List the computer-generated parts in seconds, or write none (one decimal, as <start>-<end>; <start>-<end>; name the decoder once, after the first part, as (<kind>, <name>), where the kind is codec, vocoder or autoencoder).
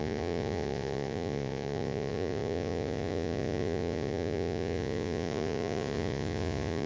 0.0-6.9 (vocoder, Vocos)